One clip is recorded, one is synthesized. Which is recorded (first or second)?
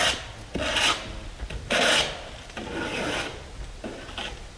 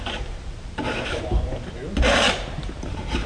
first